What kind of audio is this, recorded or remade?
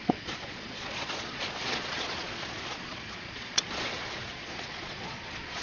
remade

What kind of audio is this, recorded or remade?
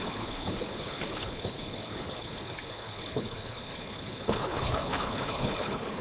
remade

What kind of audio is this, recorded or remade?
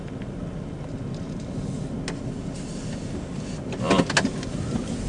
recorded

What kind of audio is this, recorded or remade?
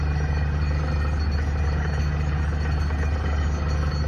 recorded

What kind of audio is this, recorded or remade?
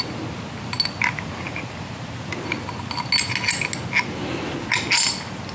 recorded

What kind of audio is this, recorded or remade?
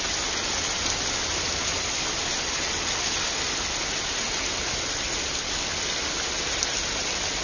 recorded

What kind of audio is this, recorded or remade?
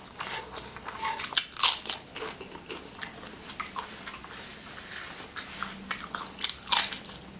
recorded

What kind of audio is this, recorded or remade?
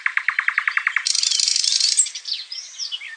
recorded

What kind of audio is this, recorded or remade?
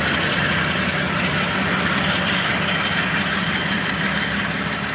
recorded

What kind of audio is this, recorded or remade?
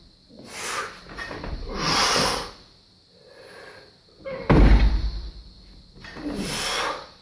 recorded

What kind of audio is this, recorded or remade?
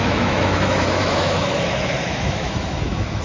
remade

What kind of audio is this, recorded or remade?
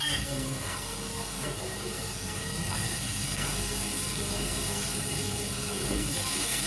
remade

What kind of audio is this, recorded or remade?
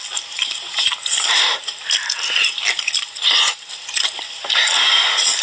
recorded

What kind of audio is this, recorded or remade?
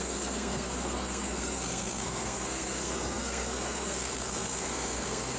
remade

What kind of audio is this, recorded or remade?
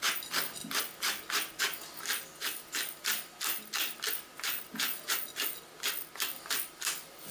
recorded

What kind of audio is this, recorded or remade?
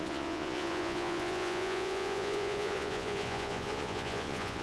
remade